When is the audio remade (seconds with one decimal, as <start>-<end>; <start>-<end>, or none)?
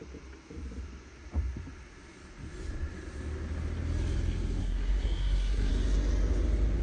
4.6-5.7